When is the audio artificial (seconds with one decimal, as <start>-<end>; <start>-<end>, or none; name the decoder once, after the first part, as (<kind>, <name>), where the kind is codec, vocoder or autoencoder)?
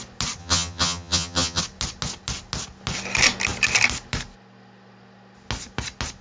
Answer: 0.4-1.6 (vocoder, HiFi-GAN)